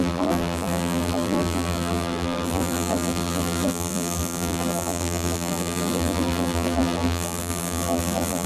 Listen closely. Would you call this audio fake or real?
fake